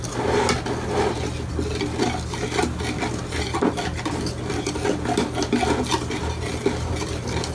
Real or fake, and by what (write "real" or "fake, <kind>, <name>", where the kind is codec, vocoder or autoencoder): real